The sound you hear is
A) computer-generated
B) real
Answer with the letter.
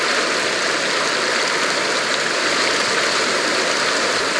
B